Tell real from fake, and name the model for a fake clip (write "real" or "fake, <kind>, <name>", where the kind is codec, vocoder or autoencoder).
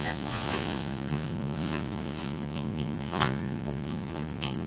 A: fake, vocoder, Vocos